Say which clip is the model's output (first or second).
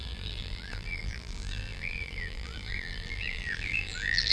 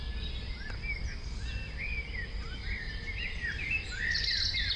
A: first